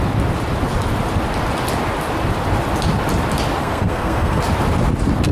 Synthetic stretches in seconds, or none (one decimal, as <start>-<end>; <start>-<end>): 3.6-4.4